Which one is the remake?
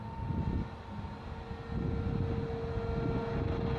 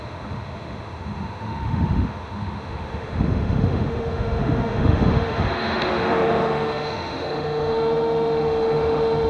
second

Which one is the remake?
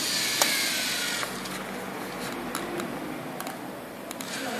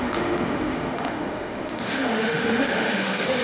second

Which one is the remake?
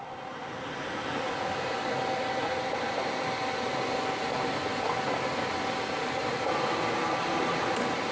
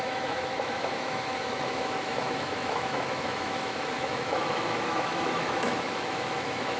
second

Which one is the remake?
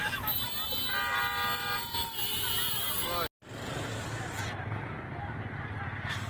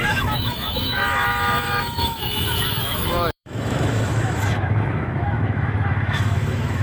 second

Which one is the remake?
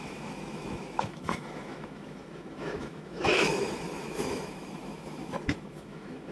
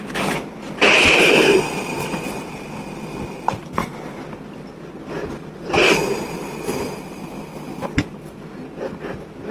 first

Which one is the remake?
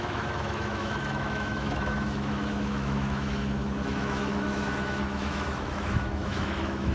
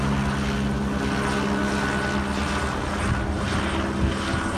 first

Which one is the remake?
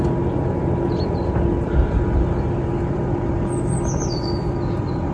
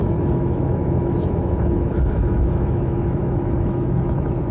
second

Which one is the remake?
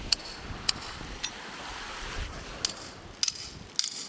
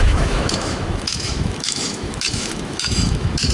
second